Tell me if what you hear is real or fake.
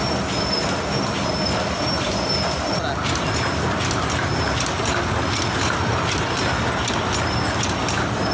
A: real